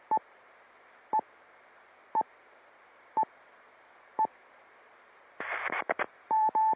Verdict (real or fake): fake